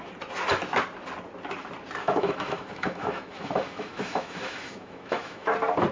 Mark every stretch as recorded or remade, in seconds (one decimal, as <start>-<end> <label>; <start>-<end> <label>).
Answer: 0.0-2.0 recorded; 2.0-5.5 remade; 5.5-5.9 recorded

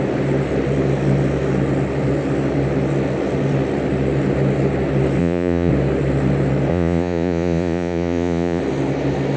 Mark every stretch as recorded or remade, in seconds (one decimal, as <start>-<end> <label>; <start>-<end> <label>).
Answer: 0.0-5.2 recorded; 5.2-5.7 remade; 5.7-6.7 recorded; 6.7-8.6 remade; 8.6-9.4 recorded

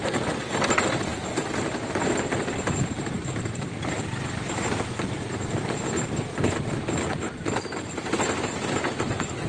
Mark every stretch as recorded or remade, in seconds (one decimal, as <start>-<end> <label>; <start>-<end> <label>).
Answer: 0.0-9.5 recorded